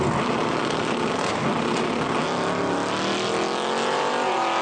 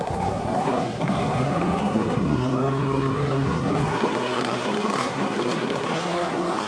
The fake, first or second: second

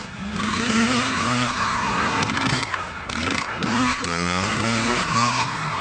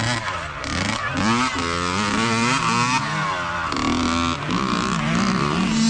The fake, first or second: first